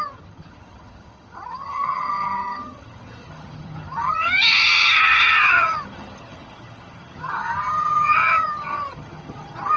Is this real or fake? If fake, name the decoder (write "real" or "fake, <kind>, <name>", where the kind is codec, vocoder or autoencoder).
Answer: fake, vocoder, HiFi-GAN